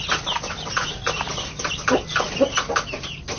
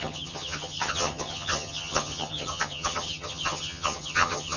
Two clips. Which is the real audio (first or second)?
first